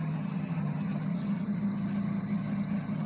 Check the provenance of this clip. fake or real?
fake